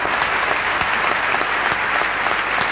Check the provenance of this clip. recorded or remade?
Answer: recorded